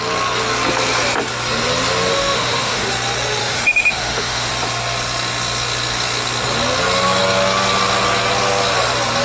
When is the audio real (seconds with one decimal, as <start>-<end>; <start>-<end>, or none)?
0.0-2.1; 2.9-3.4; 4.5-9.2